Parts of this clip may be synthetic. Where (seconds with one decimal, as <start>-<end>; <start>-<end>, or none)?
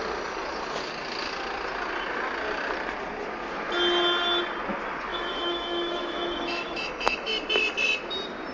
5.1-7.3